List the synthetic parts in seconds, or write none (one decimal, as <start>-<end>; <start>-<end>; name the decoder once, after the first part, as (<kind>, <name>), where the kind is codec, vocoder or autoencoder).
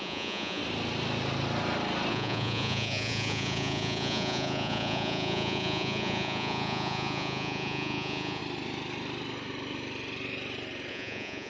0.0-0.6 (vocoder, Vocos); 2.1-8.4; 10.9-11.5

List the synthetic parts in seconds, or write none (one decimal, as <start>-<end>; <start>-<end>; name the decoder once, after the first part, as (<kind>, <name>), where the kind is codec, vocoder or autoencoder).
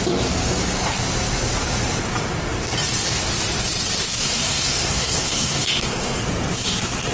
4.2-6.2 (codec, SNAC)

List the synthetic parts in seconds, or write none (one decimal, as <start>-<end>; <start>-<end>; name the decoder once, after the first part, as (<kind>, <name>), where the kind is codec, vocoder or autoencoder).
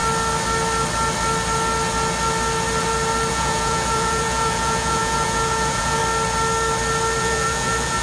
3.3-6.0 (vocoder, Vocos); 7.2-8.0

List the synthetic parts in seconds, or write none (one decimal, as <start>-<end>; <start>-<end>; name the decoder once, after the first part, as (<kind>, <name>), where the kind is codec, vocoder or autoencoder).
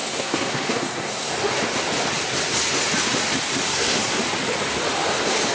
0.0-1.3 (codec, SNAC); 3.7-4.2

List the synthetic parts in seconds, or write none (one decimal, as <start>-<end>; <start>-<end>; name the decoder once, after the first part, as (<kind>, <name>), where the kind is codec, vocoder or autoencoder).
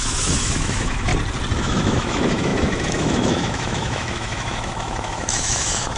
0.0-1.1 (autoencoder, DAC-VAE); 1.6-6.0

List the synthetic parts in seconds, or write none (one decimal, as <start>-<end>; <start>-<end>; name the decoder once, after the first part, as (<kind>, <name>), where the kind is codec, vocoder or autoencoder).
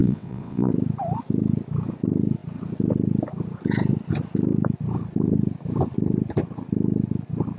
0.0-0.7 (vocoder, WaveNeXt)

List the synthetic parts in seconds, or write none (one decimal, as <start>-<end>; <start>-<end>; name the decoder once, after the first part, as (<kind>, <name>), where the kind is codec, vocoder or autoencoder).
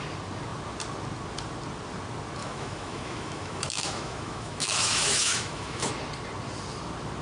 2.4-5.9 (autoencoder, DAC-VAE)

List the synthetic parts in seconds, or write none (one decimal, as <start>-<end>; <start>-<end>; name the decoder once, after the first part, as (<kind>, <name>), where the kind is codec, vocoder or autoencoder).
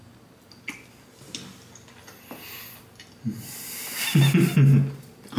none